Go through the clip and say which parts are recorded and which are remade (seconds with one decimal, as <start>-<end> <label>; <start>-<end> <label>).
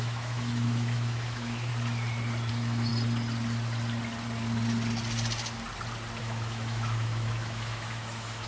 0.0-1.7 remade; 1.7-2.5 recorded; 2.5-2.9 remade; 2.9-6.2 recorded; 6.2-8.5 remade